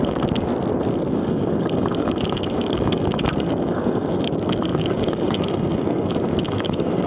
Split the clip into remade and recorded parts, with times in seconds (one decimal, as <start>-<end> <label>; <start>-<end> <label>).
0.0-0.5 remade; 0.5-1.1 recorded; 1.1-7.1 remade